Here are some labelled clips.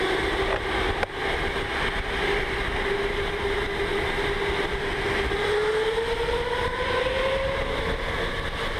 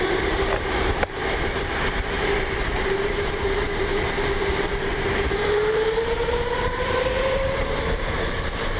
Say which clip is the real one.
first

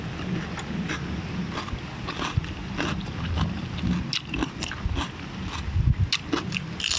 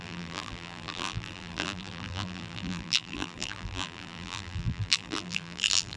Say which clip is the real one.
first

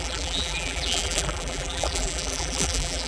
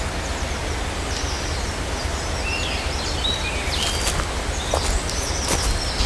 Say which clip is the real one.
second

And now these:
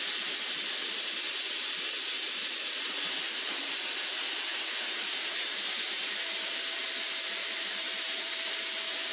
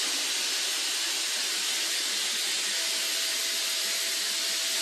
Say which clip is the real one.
second